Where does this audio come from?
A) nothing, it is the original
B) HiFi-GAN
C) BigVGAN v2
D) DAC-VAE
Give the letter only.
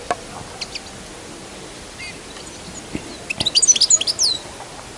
A